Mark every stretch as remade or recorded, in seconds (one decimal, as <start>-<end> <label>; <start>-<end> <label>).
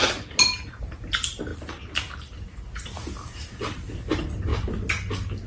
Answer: 0.0-5.5 recorded